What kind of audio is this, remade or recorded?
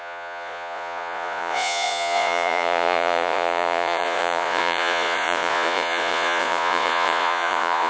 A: remade